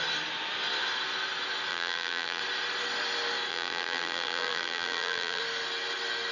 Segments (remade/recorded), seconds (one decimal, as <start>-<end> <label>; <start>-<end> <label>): 0.0-1.7 recorded; 1.7-2.4 remade; 2.4-3.5 recorded; 3.5-5.4 remade; 5.4-6.3 recorded